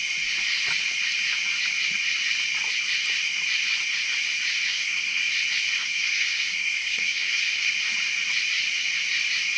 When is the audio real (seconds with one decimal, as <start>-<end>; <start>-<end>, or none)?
0.0-4.7; 5.3-5.8; 7.7-9.6